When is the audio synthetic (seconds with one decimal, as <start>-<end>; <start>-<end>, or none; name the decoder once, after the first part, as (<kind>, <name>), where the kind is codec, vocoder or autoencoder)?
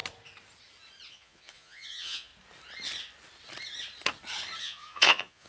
1.1-2.3 (vocoder, Vocos); 4.6-5.5